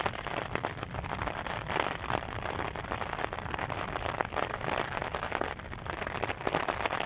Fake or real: fake